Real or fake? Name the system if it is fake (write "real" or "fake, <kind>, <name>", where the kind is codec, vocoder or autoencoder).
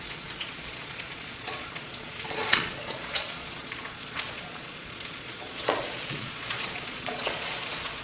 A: fake, vocoder, Vocos